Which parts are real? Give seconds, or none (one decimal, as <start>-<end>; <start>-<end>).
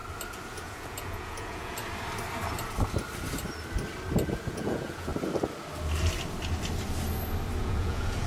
0.0-0.5; 1.8-4.5; 5.1-7.6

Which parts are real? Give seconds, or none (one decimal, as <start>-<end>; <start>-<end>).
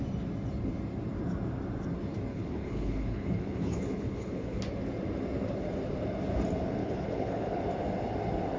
0.0-2.3; 4.6-6.8; 7.6-8.6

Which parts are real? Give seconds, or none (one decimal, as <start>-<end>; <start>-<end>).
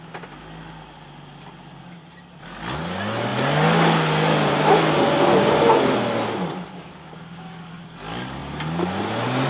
0.0-6.8; 7.7-9.5